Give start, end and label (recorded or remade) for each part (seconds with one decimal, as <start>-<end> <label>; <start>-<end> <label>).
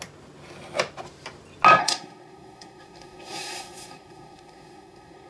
0.0-1.8 recorded; 1.8-5.3 remade